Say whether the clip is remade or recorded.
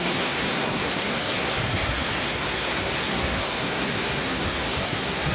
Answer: remade